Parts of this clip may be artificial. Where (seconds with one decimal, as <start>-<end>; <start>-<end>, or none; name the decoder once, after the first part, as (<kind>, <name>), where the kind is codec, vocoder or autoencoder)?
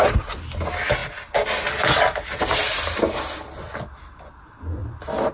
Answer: none